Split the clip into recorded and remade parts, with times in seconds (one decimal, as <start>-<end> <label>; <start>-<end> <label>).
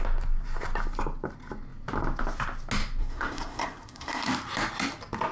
0.0-3.0 recorded; 3.0-4.3 remade; 4.3-5.3 recorded